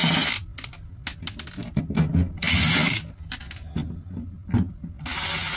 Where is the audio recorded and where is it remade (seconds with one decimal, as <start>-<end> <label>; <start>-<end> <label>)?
0.0-5.6 recorded